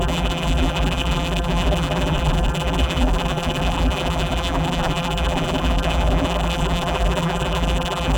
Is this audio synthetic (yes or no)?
yes